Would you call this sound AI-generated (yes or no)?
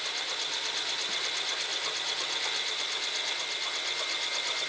no